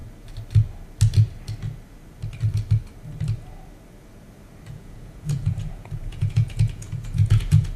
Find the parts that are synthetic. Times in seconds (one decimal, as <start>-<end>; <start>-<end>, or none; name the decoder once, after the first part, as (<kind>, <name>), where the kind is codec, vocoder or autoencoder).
4.7-7.8 (vocoder, Vocos)